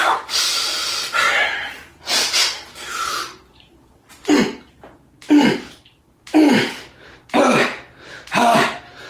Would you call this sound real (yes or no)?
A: yes